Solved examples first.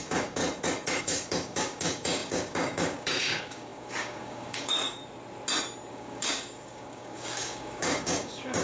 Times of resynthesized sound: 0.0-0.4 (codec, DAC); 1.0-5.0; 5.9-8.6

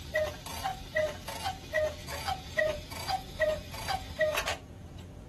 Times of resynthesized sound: 2.0-5.3 (vocoder, Vocos)